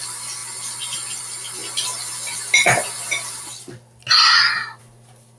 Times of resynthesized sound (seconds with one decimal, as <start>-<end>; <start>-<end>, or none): none